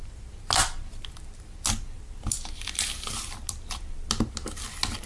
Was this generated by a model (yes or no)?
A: no